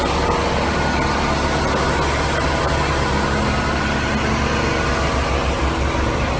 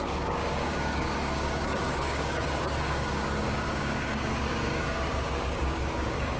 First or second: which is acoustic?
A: first